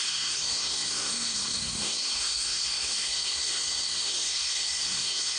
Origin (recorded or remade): remade